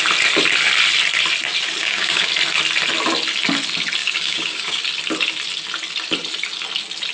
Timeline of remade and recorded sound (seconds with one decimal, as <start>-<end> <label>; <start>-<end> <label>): 0.0-1.8 recorded; 1.8-2.3 remade; 2.3-4.0 recorded; 4.0-4.8 remade; 4.8-7.1 recorded